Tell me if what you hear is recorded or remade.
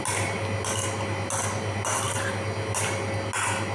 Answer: recorded